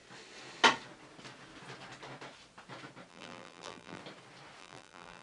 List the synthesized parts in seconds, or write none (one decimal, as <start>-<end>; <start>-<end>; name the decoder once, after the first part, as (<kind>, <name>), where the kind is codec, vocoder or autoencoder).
3.1-4.0 (vocoder, BigVGAN v2); 4.6-5.2